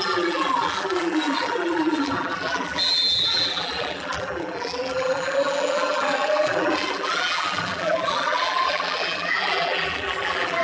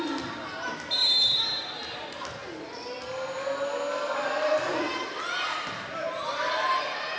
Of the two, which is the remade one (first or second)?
first